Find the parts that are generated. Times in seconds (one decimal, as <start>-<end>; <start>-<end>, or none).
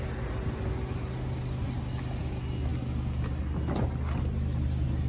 none